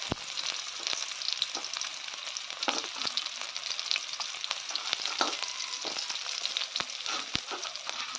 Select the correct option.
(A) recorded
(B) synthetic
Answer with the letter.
A